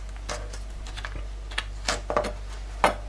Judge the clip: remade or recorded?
recorded